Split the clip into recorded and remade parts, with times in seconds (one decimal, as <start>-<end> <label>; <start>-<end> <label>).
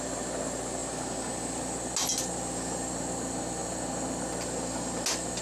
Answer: 0.0-5.4 recorded